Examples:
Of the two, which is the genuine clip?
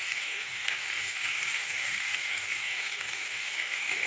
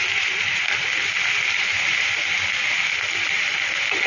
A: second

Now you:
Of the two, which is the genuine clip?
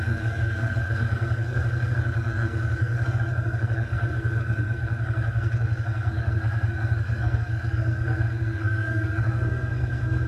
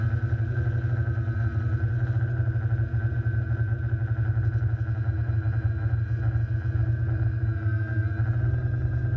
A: second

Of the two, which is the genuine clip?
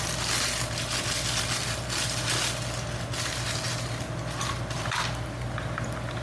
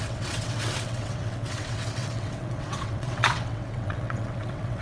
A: first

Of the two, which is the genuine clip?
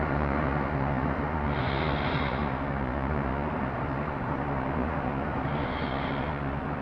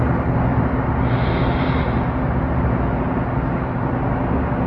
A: second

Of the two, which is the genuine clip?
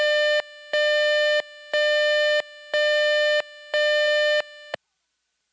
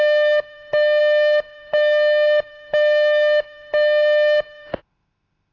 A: first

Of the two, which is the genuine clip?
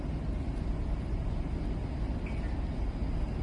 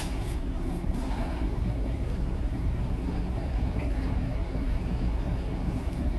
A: first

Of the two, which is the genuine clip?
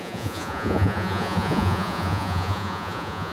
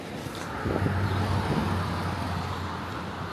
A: second